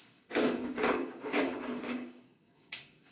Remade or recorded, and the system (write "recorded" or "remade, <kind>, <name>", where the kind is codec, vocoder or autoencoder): remade, codec, DAC